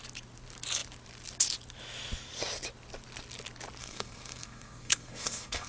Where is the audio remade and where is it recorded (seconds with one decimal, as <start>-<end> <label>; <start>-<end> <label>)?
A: 0.0-3.8 recorded; 3.8-5.7 remade